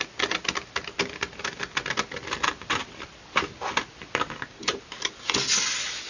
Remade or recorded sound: recorded